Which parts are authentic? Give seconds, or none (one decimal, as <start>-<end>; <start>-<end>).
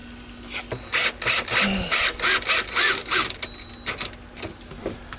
0.0-5.2